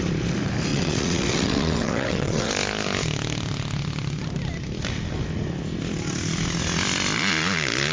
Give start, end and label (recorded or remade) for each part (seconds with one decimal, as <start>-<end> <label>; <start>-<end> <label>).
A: 0.0-0.7 recorded; 0.7-2.5 remade; 2.5-7.9 recorded